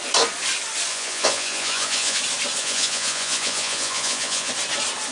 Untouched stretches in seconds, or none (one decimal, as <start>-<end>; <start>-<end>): 0.0-0.9; 2.2-2.6; 4.5-5.1